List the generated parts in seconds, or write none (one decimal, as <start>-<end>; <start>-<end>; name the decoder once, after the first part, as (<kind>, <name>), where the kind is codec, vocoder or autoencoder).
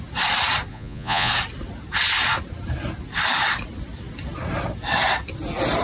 0.7-1.3 (vocoder, Vocos)